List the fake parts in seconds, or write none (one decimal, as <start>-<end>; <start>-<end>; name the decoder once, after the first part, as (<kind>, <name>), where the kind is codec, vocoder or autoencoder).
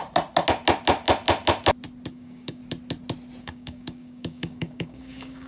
2.1-2.6 (codec, DAC); 3.4-5.5